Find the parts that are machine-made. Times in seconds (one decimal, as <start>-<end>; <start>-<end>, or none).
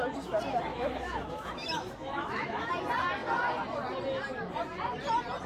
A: 0.7-2.7